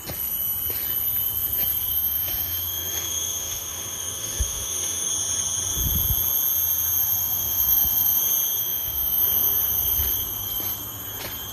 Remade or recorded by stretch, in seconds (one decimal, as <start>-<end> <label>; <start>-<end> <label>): 0.0-1.9 recorded; 1.9-5.1 remade; 5.1-7.0 recorded; 7.0-8.2 remade; 8.2-8.6 recorded; 8.6-9.2 remade; 9.2-11.5 recorded